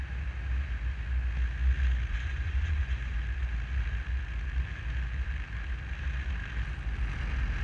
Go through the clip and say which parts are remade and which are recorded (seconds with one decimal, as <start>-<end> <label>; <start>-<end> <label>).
0.0-2.1 recorded; 2.1-3.2 remade; 3.2-7.6 recorded